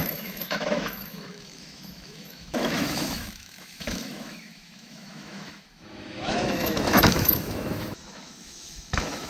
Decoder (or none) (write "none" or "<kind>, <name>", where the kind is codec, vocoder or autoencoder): autoencoder, DAC-VAE